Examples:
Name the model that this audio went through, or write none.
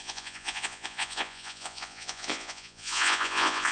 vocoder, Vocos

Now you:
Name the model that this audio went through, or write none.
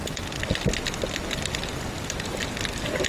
none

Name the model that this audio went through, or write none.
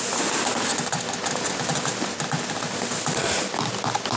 none